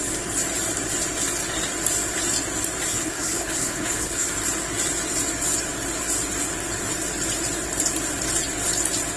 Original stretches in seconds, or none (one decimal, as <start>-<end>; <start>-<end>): 0.0-2.9; 4.3-9.2